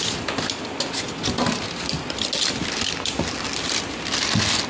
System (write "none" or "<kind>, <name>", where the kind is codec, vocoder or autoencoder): none